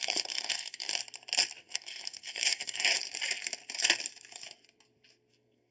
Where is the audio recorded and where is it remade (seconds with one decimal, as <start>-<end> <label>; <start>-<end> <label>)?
0.0-1.0 remade; 1.0-1.6 recorded; 1.6-2.9 remade; 2.9-5.3 recorded; 5.3-5.7 remade